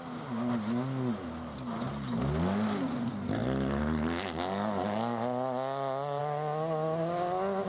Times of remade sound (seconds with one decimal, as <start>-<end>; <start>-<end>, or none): none